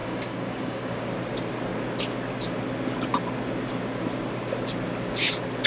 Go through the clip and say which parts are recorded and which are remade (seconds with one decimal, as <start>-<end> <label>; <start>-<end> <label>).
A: 0.0-1.1 remade; 1.1-5.7 recorded